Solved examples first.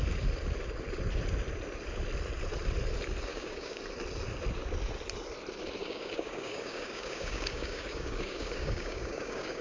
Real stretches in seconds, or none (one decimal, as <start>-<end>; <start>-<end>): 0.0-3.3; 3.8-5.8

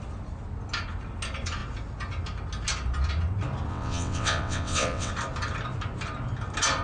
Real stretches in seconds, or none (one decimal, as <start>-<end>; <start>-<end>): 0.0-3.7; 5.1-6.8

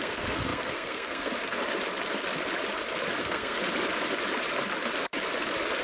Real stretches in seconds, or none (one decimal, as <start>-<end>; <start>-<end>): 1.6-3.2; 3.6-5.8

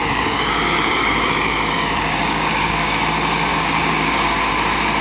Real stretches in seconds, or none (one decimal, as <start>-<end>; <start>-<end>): 3.0-3.5; 4.5-5.0

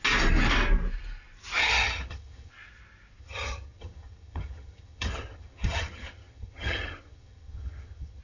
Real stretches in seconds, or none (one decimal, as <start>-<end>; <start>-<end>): 0.0-1.6; 2.5-3.2

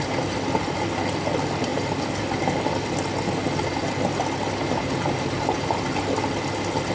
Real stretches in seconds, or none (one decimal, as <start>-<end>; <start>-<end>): 0.0-6.9

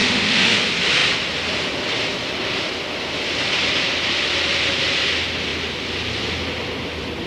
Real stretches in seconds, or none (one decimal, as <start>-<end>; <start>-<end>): 0.6-7.3

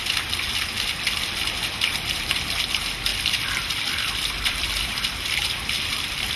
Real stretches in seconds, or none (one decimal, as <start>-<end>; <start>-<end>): 0.0-3.1; 5.3-6.4